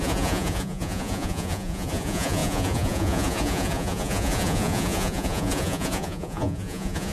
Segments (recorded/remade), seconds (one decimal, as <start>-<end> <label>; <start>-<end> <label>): 0.0-7.1 remade